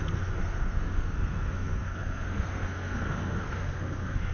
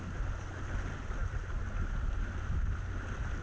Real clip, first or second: second